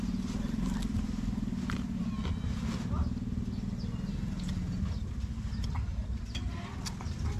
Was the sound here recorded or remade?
recorded